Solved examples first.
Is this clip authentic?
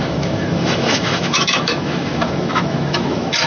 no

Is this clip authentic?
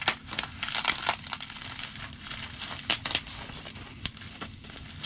no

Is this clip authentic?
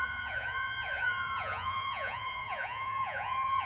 no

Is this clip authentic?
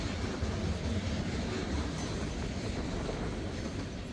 yes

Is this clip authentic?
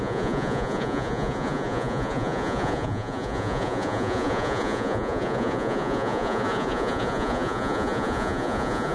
no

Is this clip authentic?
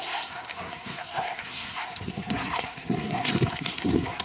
no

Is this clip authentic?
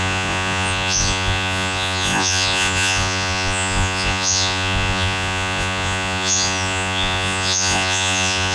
no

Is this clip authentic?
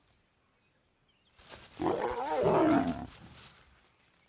yes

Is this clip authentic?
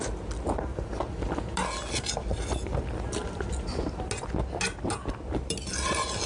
yes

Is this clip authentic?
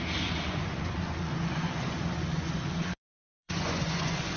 no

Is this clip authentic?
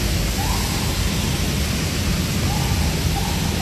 yes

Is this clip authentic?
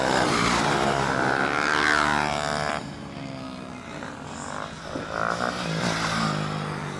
yes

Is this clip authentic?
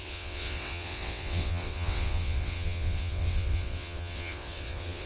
no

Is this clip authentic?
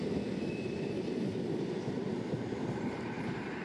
yes